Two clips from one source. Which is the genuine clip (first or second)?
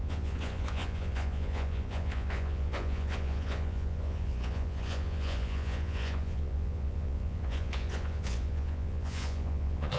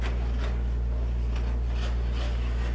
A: second